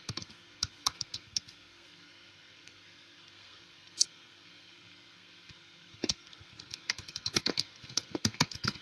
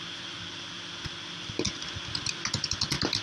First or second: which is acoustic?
second